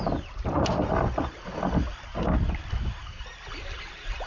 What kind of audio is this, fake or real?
real